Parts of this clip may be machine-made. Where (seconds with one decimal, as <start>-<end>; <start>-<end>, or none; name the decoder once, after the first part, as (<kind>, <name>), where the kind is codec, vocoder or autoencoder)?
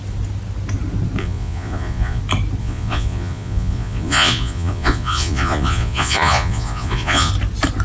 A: 1.2-2.2 (vocoder, Vocos); 2.6-7.3